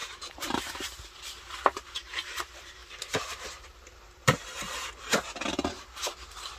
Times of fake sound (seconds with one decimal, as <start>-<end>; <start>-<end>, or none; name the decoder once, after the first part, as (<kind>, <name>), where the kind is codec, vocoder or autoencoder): 0.0-6.6 (vocoder, BigVGAN v2)